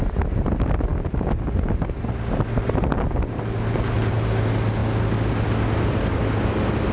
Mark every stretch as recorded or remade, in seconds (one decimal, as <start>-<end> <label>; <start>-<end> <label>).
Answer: 0.0-6.9 recorded